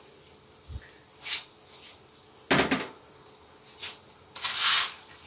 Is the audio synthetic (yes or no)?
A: no